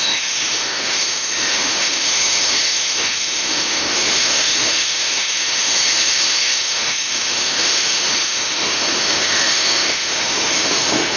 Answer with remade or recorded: remade